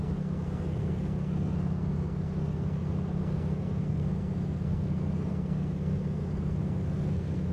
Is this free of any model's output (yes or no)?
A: no